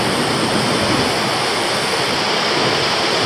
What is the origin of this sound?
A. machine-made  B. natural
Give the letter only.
A